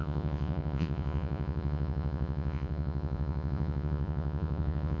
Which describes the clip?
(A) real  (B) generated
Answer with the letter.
B